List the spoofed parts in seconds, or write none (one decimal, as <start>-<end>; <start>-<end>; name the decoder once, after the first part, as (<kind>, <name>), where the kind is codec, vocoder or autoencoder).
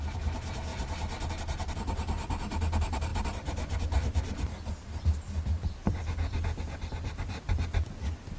none